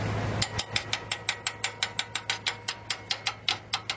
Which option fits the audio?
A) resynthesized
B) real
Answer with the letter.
B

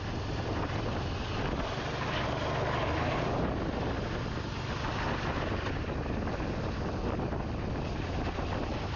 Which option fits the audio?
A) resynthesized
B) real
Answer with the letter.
B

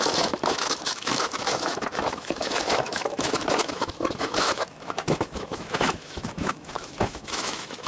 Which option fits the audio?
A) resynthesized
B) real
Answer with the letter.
A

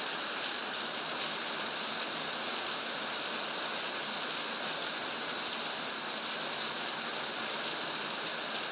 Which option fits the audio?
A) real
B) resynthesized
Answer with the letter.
A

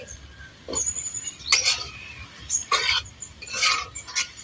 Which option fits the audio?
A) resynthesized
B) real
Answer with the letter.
A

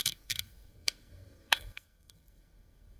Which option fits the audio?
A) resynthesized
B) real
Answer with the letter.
A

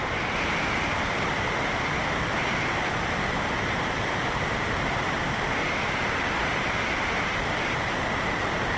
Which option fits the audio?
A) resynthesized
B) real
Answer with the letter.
A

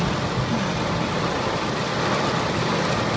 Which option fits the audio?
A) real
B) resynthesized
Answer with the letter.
A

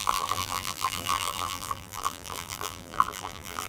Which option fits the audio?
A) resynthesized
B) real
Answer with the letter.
A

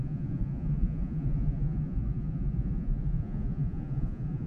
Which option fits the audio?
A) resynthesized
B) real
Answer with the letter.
A